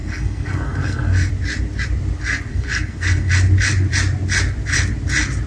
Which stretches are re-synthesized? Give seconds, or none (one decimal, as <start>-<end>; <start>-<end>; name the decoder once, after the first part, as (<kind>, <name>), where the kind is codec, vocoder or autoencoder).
0.0-1.3 (codec, SNAC); 2.5-3.3

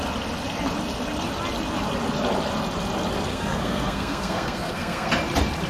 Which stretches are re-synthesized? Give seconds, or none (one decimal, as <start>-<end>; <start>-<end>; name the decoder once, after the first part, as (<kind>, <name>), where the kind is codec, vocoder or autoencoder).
3.3-5.1 (codec, SNAC)